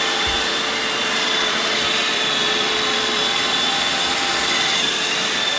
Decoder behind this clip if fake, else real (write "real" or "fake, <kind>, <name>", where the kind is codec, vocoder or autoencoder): fake, vocoder, BigVGAN v2